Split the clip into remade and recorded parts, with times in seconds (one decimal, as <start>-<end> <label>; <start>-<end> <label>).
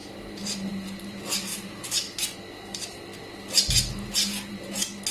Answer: 0.0-1.5 recorded; 1.5-2.2 remade; 2.2-5.1 recorded